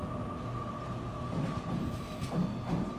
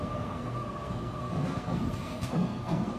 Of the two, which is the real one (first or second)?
first